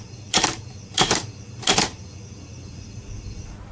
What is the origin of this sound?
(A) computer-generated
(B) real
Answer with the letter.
A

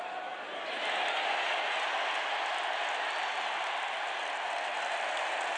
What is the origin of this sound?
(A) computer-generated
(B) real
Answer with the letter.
B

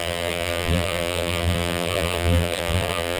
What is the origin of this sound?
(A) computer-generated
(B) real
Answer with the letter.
A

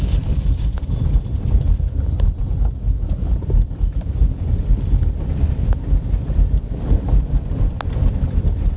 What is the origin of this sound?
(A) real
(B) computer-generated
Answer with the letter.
B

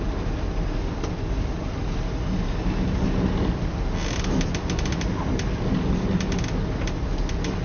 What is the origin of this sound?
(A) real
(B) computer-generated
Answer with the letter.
A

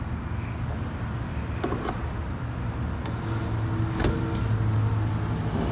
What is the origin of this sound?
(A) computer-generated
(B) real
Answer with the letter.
B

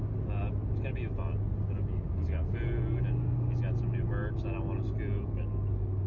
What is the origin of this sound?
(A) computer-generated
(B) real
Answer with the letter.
B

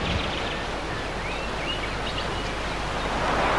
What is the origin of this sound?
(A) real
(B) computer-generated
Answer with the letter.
A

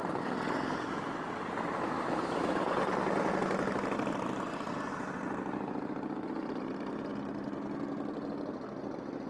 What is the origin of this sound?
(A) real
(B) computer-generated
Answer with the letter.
A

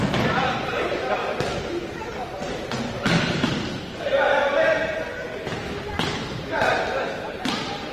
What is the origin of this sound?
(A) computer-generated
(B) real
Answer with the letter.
B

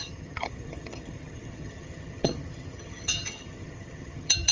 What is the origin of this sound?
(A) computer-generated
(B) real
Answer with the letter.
A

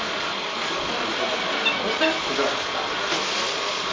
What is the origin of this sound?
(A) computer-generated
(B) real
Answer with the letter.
B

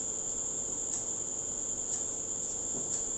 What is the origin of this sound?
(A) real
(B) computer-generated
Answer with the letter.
A